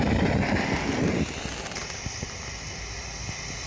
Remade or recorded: recorded